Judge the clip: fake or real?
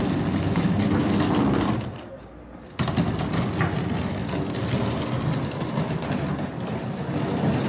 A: real